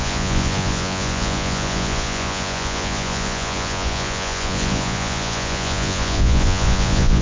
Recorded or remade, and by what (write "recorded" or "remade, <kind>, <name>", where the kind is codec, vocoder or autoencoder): remade, vocoder, Vocos